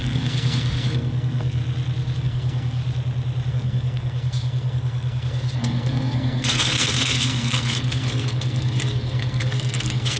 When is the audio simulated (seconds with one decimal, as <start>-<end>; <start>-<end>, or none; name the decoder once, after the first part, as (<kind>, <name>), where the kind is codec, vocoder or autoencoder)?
0.0-1.6 (codec, SNAC); 2.2-2.8; 3.5-10.2